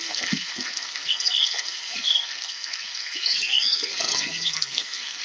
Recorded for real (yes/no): no